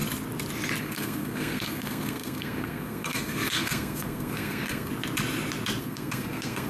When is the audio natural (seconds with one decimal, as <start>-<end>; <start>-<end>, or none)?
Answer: 0.0-0.8; 4.9-5.8